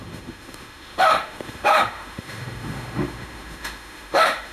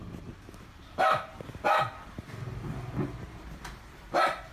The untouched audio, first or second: second